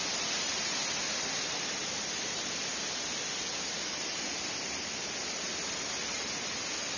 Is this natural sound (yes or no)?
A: yes